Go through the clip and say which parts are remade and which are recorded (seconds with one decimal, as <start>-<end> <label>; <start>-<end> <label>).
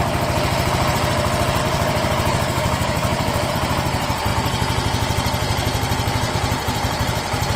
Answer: 0.0-1.6 recorded; 1.6-3.5 remade; 3.5-7.6 recorded